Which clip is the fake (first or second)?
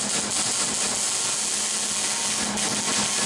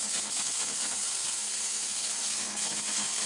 second